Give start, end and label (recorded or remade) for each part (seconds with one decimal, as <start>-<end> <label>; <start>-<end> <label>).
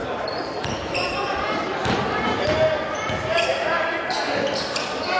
0.0-2.4 remade; 2.4-5.2 recorded